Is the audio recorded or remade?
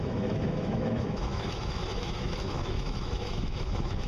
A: remade